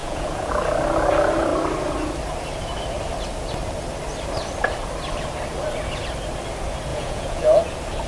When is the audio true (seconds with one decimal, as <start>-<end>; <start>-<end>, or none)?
0.5-6.9; 7.6-8.1